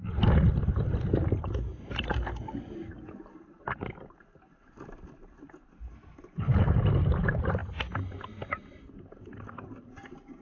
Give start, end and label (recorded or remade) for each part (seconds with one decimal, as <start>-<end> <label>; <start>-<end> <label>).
0.0-10.4 recorded